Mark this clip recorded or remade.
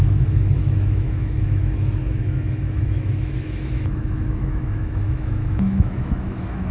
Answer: remade